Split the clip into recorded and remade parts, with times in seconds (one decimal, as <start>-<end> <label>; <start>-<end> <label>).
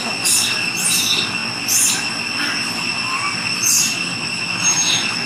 0.0-5.3 recorded